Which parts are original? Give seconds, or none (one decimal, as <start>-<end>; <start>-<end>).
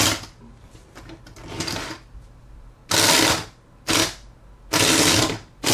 2.8-5.2